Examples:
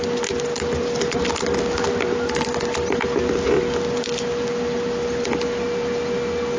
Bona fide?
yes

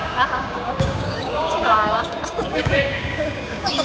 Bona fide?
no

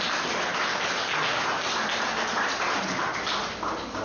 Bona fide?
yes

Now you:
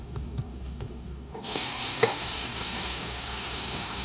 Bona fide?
no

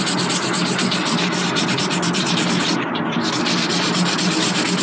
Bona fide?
yes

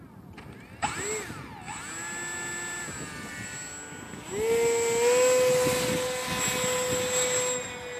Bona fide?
yes